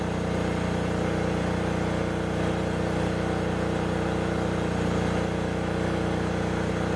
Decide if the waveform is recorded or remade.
recorded